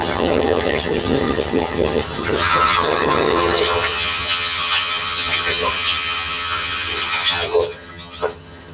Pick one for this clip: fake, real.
fake